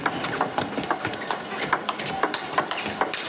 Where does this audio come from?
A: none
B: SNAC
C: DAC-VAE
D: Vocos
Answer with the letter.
A